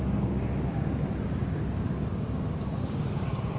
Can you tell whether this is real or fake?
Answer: fake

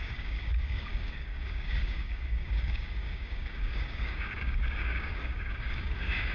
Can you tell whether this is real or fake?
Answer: fake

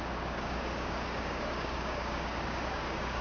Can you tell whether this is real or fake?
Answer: fake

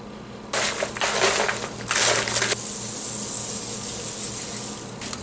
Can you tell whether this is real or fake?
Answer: real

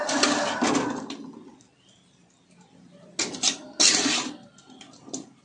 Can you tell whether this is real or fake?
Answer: real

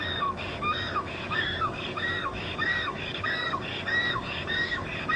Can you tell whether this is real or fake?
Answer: fake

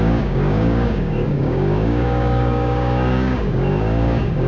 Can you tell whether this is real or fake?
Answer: fake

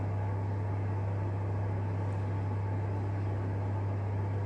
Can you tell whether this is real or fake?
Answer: real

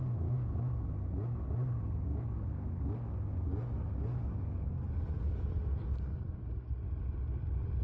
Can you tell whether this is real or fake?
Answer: real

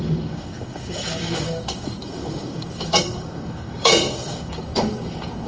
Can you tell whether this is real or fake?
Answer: fake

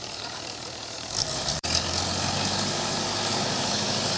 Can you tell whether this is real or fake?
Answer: fake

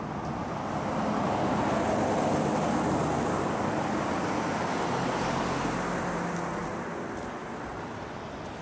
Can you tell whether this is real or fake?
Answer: real